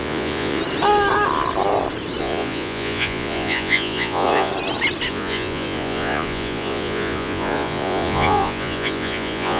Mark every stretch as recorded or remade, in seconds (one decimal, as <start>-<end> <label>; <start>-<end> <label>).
0.0-0.6 remade; 0.6-2.2 recorded; 2.2-4.5 remade; 4.5-5.1 recorded; 5.1-9.6 remade